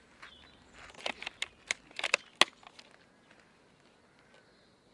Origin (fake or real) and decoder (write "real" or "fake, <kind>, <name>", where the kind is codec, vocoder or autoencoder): real